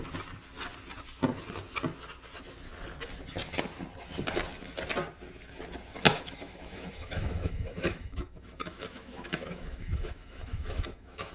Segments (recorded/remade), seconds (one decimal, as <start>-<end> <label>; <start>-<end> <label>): 0.0-6.1 recorded; 6.1-11.3 remade